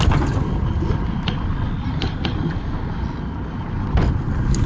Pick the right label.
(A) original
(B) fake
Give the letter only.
A